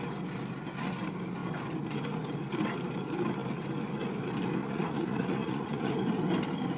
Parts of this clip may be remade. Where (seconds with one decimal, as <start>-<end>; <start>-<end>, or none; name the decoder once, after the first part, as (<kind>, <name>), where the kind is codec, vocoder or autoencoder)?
4.6-5.9 (vocoder, Vocos)